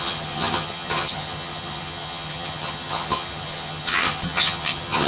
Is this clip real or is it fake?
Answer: fake